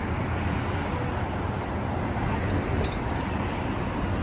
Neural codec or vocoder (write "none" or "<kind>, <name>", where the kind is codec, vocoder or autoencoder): none